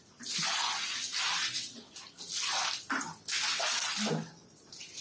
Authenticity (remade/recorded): recorded